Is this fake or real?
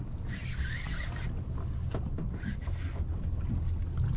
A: real